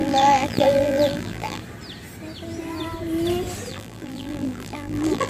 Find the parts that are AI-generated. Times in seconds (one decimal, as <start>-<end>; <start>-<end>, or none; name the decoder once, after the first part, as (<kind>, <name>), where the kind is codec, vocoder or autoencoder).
0.0-1.6 (vocoder, BigVGAN v2); 3.7-5.3